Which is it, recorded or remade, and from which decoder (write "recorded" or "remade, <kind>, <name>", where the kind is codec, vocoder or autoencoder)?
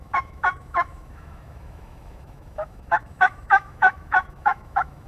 remade, autoencoder, DAC-VAE